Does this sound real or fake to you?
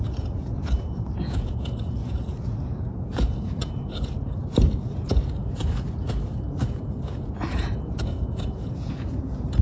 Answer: fake